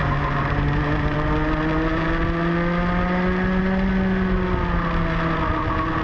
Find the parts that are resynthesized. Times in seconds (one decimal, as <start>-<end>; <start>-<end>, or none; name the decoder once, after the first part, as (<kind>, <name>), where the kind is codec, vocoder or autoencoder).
none

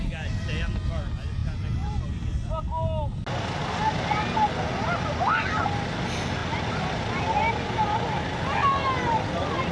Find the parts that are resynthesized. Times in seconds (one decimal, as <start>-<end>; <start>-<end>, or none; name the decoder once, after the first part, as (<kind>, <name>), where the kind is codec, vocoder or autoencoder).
none

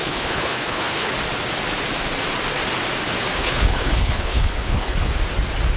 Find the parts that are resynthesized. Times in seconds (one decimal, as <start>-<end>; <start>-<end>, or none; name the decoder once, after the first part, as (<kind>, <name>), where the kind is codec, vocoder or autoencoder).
0.0-1.1 (codec, HILCodec); 3.3-5.1

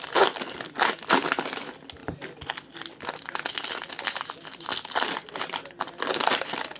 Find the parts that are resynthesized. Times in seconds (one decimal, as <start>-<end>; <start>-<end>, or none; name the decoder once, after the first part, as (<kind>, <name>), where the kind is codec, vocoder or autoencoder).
none

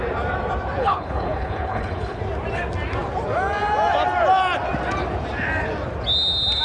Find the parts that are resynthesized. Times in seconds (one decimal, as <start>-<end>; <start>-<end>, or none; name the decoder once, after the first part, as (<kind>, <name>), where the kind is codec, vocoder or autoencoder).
0.8-2.2 (codec, HILCodec)

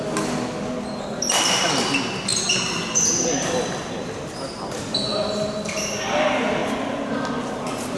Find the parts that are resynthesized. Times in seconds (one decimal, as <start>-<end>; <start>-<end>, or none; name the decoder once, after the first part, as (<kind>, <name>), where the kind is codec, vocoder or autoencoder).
none

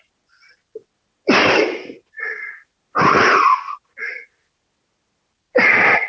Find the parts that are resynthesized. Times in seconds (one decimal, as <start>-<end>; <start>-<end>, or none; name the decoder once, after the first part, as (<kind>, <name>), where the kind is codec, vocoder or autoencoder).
none

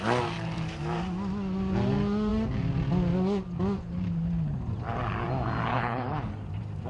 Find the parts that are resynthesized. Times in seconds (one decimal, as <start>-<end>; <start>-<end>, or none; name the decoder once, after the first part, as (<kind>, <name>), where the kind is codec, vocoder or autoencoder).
5.7-6.3 (codec, HILCodec)